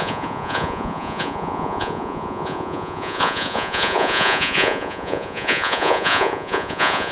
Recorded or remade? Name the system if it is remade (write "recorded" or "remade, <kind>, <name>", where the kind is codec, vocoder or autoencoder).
remade, vocoder, Vocos